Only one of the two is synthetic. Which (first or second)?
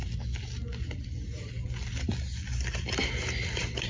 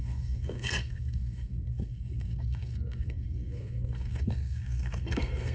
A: second